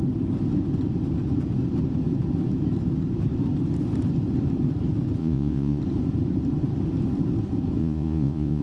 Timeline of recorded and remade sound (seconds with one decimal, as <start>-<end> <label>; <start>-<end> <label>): 0.0-5.2 recorded; 5.2-5.8 remade; 5.8-7.8 recorded; 7.8-8.6 remade